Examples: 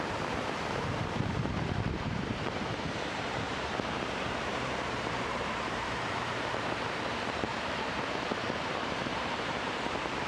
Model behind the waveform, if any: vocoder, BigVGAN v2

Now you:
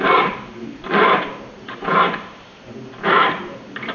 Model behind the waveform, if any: vocoder, BigVGAN v2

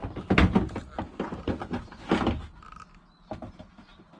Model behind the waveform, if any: none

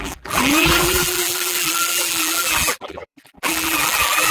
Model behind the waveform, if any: vocoder, BigVGAN v2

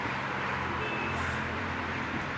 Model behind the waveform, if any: vocoder, BigVGAN v2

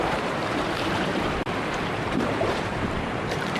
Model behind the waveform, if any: vocoder, BigVGAN v2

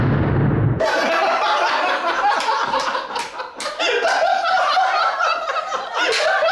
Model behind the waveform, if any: none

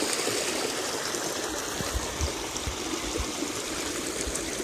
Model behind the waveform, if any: none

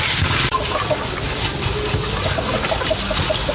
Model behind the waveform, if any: none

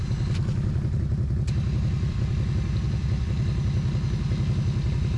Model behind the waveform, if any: none